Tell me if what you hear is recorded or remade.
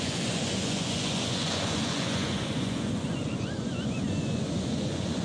remade